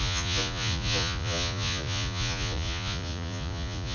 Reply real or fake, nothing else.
fake